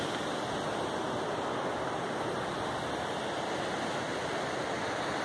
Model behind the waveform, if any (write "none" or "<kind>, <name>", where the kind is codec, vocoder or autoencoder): none